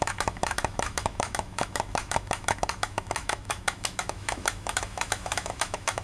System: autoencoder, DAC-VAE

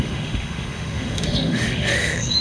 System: autoencoder, DAC-VAE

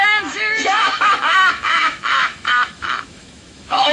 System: autoencoder, DAC-VAE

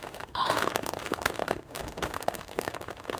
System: autoencoder, DAC-VAE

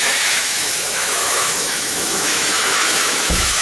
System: autoencoder, DAC-VAE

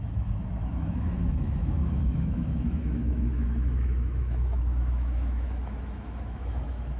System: autoencoder, DAC-VAE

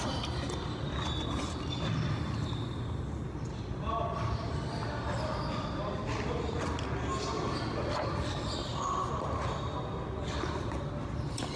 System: none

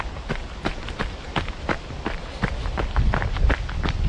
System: none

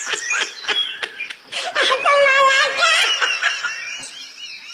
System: none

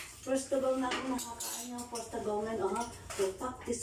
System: none